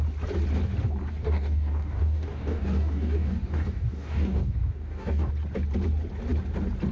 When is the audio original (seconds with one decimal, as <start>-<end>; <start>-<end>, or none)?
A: 0.0-1.2; 5.3-6.9